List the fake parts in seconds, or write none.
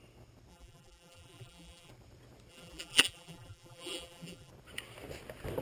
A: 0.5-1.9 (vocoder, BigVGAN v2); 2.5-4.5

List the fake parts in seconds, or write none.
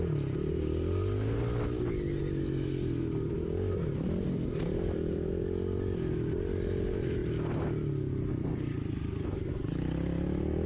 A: none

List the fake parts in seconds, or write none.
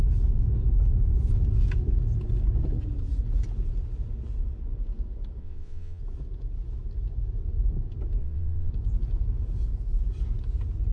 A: 5.4-6.0 (vocoder, WaveNeXt); 8.2-8.7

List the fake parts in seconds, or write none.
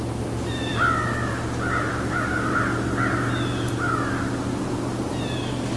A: none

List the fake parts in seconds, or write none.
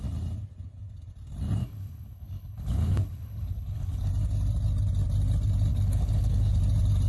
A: 1.6-4.1 (codec, HILCodec); 5.7-6.6